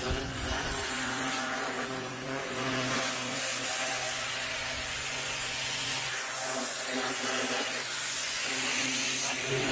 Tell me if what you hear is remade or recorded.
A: remade